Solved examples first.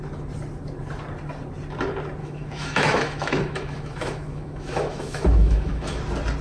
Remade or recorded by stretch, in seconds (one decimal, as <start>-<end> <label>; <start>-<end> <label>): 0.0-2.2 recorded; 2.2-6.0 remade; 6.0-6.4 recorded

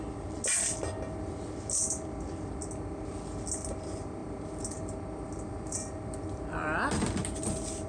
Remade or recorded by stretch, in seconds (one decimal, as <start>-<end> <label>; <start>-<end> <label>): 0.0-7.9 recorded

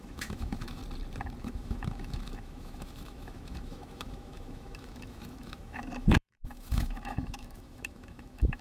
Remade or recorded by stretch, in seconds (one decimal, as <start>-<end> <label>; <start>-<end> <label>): 0.0-0.8 remade; 0.8-1.4 recorded; 1.4-8.6 remade